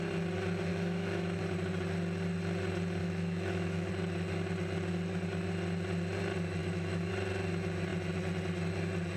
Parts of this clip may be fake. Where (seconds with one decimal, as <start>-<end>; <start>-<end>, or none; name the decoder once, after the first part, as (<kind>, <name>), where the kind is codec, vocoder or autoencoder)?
0.7-1.4 (autoencoder, DAC-VAE); 3.0-3.9; 6.6-7.1